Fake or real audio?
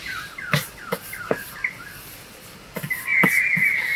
real